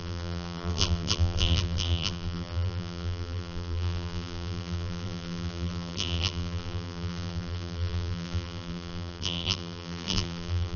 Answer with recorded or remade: remade